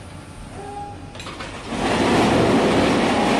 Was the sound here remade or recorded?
recorded